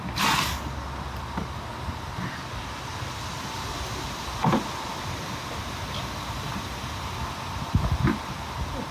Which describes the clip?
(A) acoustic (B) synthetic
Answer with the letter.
A